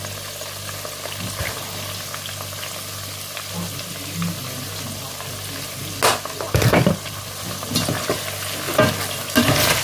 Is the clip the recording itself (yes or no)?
yes